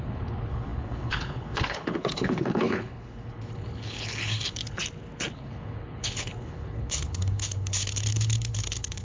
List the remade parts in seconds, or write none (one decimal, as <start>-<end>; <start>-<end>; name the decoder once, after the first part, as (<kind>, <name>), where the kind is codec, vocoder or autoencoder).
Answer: 0.0-4.8 (codec, HILCodec); 5.3-9.0